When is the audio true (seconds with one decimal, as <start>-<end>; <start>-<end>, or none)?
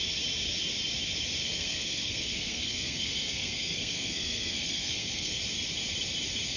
0.0-1.4; 5.4-6.6